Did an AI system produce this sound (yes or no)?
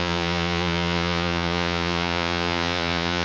yes